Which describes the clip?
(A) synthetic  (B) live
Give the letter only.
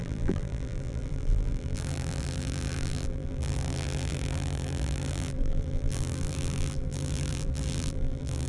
A